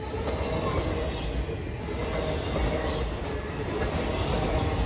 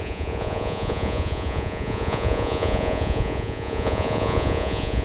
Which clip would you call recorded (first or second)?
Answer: first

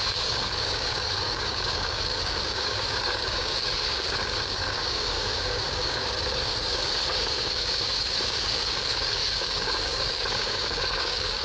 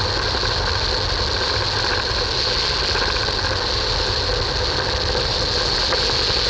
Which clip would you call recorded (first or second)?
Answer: second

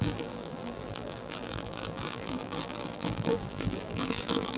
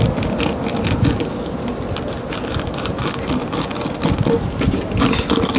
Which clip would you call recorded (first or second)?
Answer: second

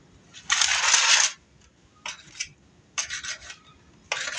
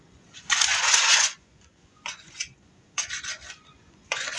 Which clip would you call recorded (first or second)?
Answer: first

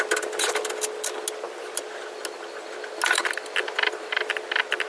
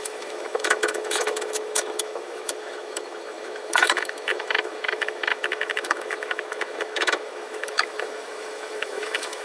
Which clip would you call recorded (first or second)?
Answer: first